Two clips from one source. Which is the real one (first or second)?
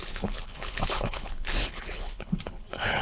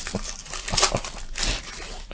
second